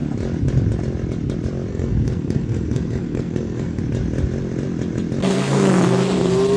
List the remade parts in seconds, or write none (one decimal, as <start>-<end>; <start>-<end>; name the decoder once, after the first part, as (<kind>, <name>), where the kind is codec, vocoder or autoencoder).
1.7-3.8 (codec, SNAC); 5.2-5.7